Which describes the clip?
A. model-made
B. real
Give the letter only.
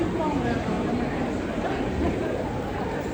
A